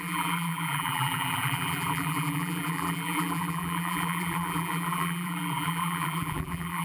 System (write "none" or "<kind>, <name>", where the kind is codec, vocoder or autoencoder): vocoder, BigVGAN v2